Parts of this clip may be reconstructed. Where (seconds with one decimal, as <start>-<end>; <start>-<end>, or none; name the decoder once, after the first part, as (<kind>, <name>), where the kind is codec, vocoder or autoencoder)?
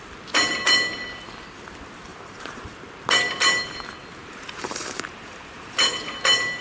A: 2.1-2.7 (vocoder, BigVGAN v2); 4.2-5.7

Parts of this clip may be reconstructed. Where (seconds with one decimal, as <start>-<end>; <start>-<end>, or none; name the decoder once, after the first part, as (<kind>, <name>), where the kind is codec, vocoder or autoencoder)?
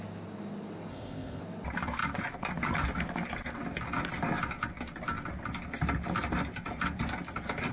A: 0.9-1.4 (codec, ZipCodec)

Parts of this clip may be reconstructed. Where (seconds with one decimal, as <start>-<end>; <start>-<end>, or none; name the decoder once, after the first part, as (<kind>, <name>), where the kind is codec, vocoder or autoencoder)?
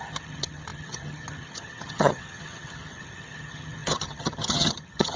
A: 0.0-5.2 (vocoder, HiFi-GAN)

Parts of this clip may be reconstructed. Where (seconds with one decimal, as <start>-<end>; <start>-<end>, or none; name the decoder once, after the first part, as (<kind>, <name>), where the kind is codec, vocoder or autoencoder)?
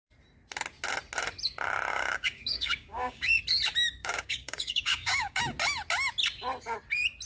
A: 1.9-3.4 (codec, DAC); 4.0-5.4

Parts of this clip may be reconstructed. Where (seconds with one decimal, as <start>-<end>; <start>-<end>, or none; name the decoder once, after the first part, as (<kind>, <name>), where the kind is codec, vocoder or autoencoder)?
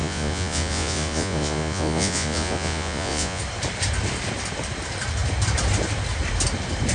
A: 0.0-3.4 (vocoder, Vocos)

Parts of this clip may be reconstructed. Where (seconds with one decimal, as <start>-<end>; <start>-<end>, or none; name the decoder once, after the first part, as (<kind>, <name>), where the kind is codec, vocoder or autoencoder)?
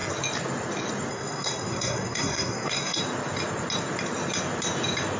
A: 1.1-3.0 (codec, SNAC)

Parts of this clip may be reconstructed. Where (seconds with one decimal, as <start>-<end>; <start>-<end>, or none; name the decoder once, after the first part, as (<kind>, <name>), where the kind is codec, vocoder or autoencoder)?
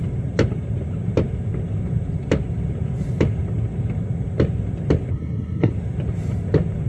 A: 5.1-5.7 (codec, SNAC)